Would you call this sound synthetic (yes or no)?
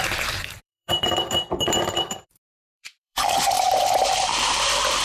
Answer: yes